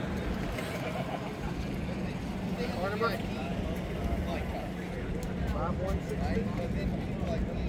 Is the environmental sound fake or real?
real